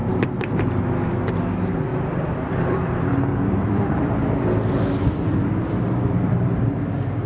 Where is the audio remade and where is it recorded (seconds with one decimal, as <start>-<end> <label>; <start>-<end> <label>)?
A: 0.0-0.7 remade; 0.7-1.9 recorded; 1.9-6.3 remade; 6.3-7.3 recorded